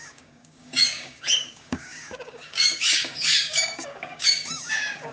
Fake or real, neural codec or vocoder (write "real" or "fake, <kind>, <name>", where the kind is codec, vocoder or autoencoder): fake, codec, DAC